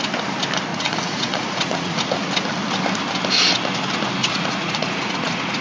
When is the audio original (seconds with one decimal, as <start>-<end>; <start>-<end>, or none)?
0.0-0.7; 2.2-4.2